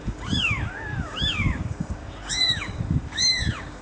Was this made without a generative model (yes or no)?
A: no